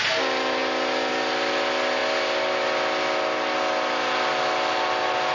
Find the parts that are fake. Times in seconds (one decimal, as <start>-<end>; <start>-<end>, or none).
none